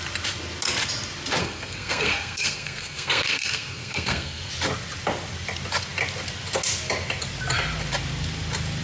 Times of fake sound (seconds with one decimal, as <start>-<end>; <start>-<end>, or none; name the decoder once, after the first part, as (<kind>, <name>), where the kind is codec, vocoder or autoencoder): 1.4-4.5 (codec, SNAC)